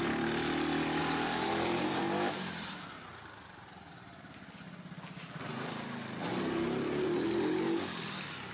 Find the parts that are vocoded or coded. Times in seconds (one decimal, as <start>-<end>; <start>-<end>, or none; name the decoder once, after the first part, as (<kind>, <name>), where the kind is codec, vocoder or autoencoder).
1.0-2.0 (vocoder, BigVGAN v2)